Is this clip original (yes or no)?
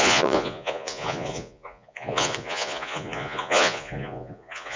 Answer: no